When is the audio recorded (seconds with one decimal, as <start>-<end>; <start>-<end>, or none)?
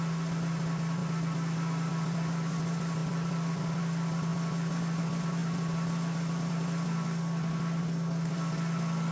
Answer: 0.0-9.1